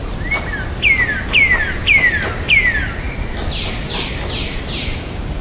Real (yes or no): yes